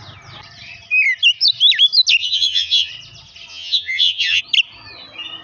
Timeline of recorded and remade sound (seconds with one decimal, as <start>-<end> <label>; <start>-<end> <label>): 0.0-2.2 recorded; 2.2-2.9 remade; 2.9-3.5 recorded; 3.5-4.4 remade; 4.4-5.4 recorded